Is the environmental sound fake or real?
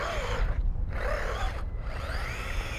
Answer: real